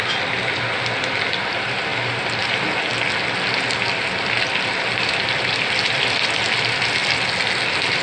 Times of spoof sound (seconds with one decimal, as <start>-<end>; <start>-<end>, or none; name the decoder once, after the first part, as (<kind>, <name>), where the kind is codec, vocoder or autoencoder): none